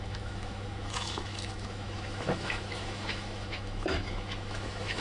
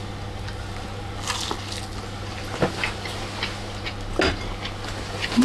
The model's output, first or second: first